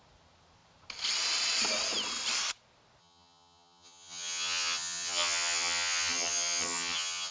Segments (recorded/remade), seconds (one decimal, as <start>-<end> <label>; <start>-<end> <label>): 0.0-3.0 recorded; 3.0-7.3 remade